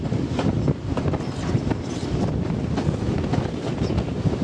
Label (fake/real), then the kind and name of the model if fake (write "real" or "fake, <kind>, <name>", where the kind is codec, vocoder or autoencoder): fake, vocoder, BigVGAN v2